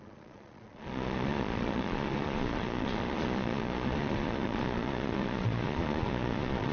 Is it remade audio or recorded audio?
remade